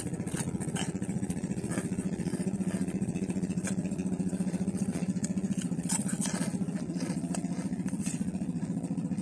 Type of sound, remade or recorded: remade